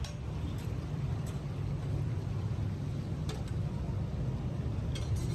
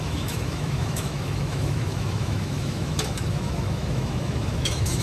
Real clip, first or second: first